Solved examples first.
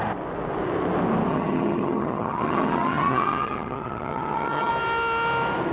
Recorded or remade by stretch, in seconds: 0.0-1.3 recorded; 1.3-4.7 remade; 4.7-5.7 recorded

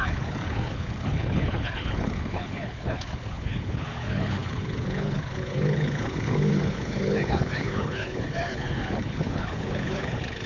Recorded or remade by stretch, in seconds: 0.0-10.5 remade

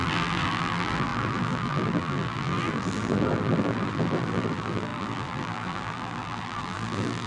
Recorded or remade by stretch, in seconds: 0.0-7.3 remade

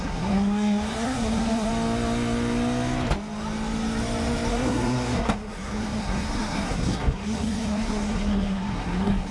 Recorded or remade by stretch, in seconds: 0.0-1.7 remade; 1.7-4.5 recorded; 4.5-9.3 remade

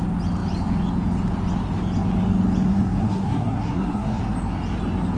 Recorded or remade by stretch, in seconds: 0.0-2.7 recorded; 2.7-4.2 remade; 4.2-5.2 recorded

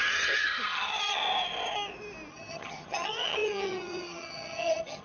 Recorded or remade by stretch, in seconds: 0.0-1.2 remade; 1.2-2.3 recorded; 2.3-5.0 remade